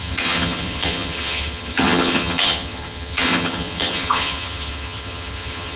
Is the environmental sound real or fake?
fake